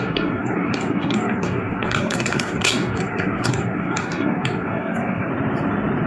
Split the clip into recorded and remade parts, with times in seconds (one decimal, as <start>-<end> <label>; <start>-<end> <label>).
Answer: 0.0-5.3 remade; 5.3-6.1 recorded